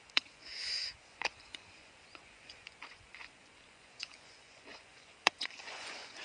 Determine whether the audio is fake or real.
fake